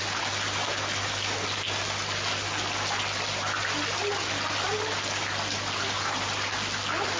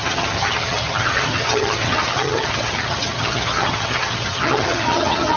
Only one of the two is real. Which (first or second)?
first